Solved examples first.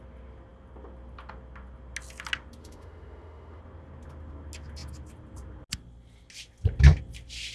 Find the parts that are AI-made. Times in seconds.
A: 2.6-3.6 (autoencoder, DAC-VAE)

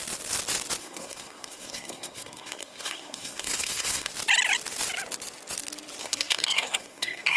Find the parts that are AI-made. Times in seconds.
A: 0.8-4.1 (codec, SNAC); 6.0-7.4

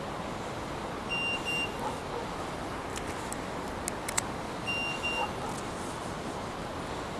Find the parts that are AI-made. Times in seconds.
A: none

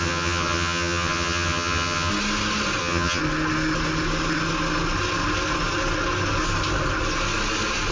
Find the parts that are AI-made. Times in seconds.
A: 0.0-2.1 (vocoder, HiFi-GAN); 2.8-3.2